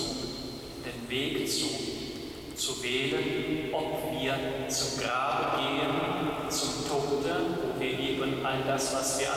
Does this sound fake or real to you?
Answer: real